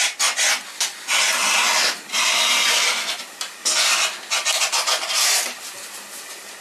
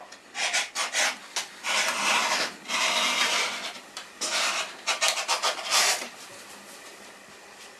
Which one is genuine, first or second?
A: first